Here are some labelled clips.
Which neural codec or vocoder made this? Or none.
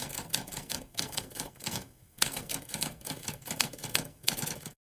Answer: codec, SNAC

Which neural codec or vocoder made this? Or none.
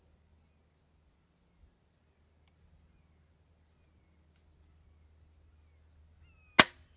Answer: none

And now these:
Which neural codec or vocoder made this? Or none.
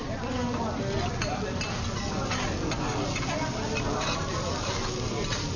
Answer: none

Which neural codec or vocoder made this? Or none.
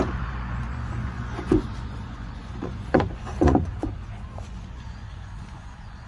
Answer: vocoder, Vocos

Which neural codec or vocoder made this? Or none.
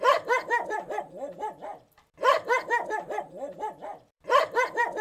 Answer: vocoder, BigVGAN v2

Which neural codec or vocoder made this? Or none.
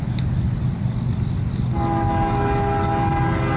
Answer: none